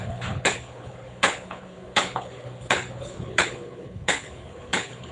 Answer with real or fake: fake